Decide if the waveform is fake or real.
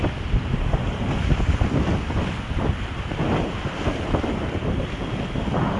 real